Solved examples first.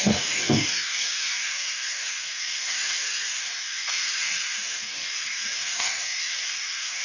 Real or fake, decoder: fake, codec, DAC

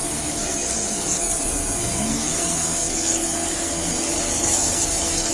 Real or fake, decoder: fake, codec, SNAC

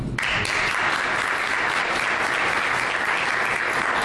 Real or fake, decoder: real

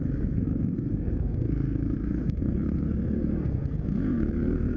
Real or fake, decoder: fake, codec, SNAC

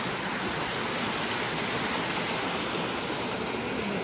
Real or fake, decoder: real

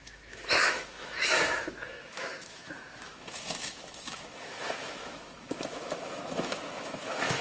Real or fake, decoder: fake, autoencoder, DAC-VAE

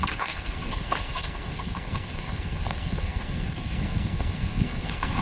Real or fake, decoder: fake, codec, SNAC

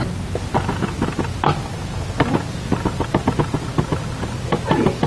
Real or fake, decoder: real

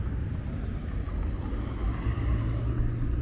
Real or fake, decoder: real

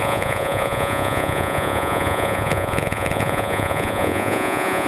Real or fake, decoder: fake, vocoder, Vocos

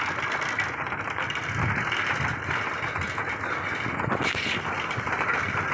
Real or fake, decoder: real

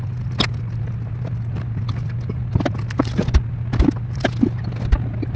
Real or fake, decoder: real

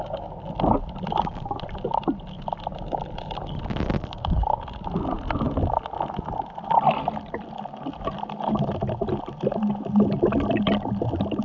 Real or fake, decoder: real